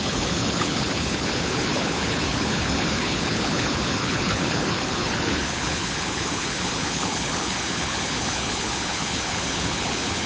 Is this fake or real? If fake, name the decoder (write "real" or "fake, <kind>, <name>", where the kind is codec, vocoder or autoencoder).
fake, codec, HILCodec